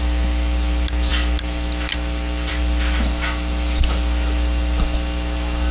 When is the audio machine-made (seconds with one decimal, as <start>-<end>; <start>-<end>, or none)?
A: none

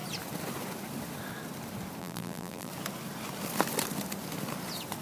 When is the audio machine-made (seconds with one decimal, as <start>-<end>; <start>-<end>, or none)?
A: 2.0-2.7

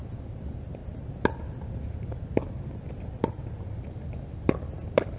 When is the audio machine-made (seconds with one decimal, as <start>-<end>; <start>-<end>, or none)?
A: 0.0-0.8; 3.9-5.2

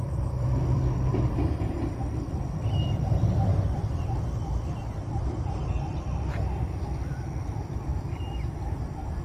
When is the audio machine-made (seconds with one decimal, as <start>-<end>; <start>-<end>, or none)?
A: 0.0-7.9

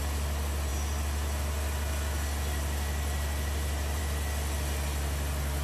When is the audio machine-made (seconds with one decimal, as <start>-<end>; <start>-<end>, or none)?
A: none